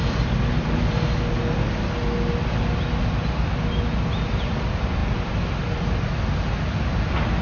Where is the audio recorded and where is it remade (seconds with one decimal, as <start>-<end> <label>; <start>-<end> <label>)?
0.0-7.4 recorded

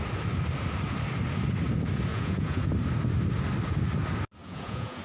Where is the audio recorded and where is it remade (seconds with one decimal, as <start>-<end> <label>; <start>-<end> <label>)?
0.0-2.1 recorded; 2.1-2.7 remade; 2.7-4.4 recorded; 4.4-5.0 remade